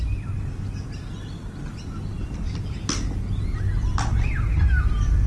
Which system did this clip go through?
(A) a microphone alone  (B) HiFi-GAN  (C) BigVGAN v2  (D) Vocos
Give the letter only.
A